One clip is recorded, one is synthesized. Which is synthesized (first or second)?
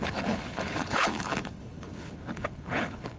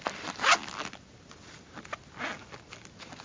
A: first